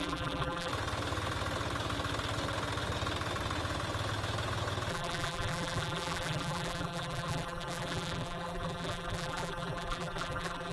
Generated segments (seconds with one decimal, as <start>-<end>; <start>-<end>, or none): 0.0-0.7; 4.9-10.7